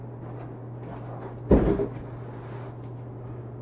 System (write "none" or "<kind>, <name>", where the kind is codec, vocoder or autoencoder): none